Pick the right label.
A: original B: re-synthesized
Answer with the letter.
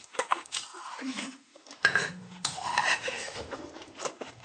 B